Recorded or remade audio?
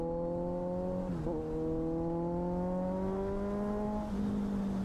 recorded